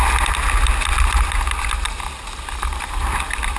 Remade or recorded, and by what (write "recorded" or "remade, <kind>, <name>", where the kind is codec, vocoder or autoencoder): recorded